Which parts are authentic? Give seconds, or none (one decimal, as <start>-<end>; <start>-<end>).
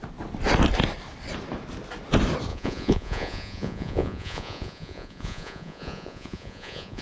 0.0-2.5